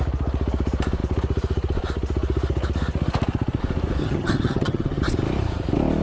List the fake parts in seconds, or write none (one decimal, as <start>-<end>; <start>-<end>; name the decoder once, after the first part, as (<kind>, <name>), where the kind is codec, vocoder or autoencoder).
4.0-5.0 (vocoder, HiFi-GAN)